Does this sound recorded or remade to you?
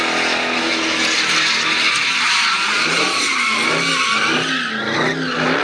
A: recorded